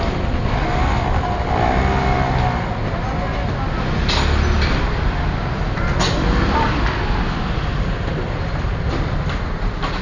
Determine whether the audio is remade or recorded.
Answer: recorded